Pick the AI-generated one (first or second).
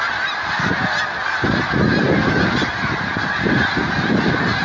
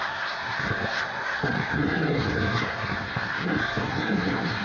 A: second